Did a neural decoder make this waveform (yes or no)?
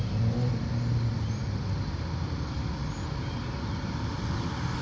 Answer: no